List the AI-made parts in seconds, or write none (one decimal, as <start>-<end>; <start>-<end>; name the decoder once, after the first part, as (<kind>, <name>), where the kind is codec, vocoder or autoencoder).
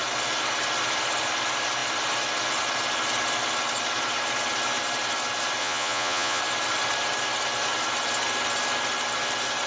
5.6-6.4 (vocoder, Vocos)